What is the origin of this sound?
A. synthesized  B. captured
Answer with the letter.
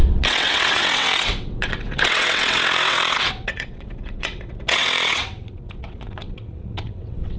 A